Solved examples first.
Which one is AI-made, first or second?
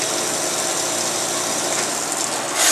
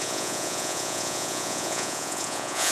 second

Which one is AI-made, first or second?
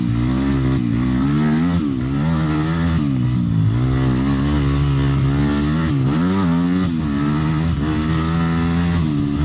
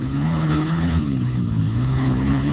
second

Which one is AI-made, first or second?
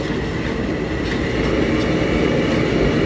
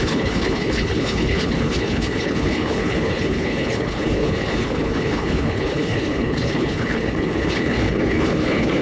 second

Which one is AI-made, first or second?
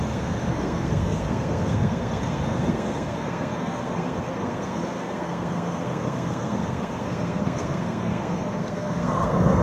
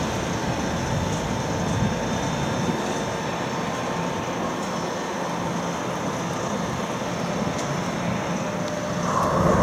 first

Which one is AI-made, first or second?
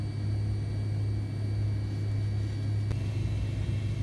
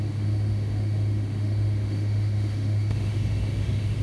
second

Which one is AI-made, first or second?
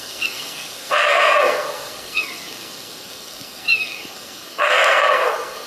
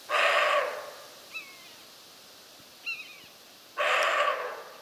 first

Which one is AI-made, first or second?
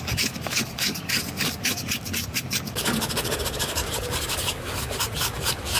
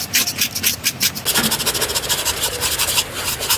first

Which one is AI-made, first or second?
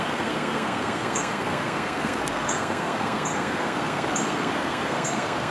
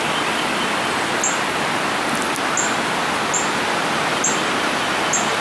first